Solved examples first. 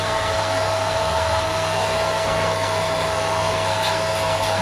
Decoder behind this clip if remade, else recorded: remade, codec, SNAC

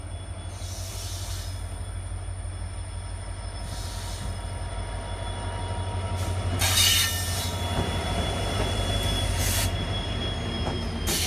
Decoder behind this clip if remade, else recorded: recorded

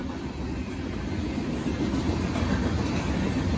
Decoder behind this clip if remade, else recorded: recorded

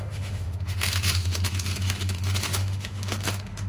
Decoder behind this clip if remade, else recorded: remade, autoencoder, DAC-VAE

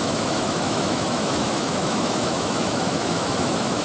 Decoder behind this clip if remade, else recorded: remade, autoencoder, DAC-VAE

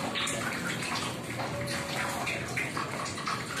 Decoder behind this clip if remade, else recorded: recorded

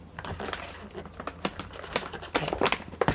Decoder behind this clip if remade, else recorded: recorded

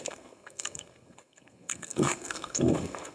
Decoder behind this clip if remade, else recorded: remade, codec, SNAC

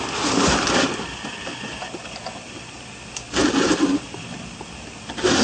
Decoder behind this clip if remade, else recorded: recorded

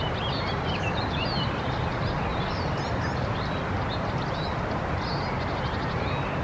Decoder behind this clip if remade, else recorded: recorded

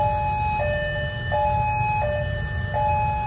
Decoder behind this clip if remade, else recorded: recorded